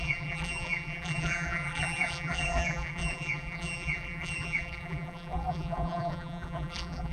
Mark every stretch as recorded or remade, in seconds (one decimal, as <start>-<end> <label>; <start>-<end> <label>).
0.0-7.1 remade